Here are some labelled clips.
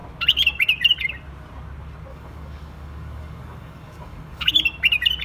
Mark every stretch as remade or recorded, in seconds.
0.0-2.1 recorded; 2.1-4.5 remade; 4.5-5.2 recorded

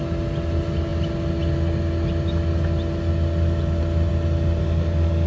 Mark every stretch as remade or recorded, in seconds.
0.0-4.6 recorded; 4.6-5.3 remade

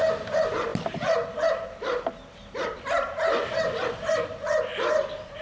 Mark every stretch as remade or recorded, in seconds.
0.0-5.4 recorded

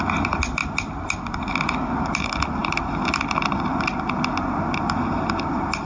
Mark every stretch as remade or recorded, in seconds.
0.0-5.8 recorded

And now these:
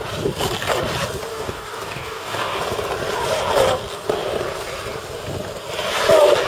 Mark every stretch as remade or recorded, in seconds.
0.0-1.3 recorded; 1.3-2.6 remade; 2.6-6.5 recorded

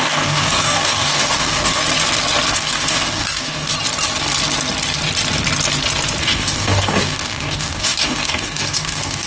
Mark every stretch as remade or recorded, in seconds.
0.0-1.8 remade; 1.8-2.5 recorded; 2.5-3.7 remade; 3.7-6.2 recorded; 6.2-9.3 remade

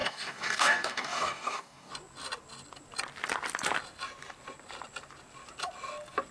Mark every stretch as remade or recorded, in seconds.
0.0-1.9 remade; 1.9-6.3 recorded